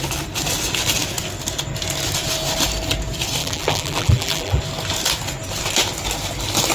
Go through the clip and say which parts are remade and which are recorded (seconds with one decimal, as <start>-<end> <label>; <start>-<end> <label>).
0.0-3.4 recorded; 3.4-4.6 remade; 4.6-6.7 recorded